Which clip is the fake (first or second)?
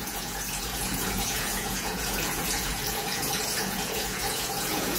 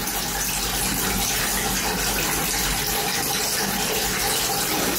first